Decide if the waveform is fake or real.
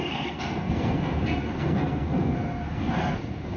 fake